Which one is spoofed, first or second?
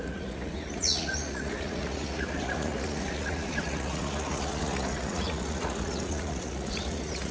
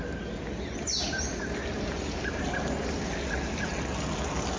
first